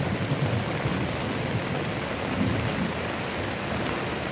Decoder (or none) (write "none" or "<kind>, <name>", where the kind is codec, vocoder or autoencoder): none